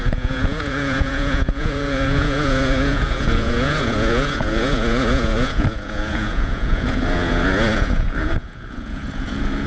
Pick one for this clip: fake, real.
fake